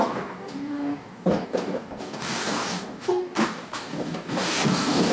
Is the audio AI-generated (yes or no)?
yes